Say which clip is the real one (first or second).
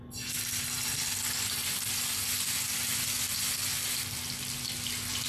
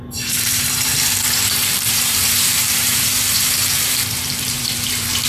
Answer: first